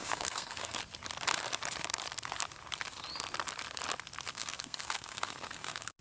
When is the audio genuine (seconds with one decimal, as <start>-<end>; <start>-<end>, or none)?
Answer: 0.8-4.3